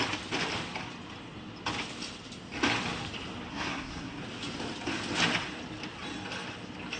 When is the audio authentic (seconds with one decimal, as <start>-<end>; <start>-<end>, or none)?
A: 0.0-3.5; 4.2-7.0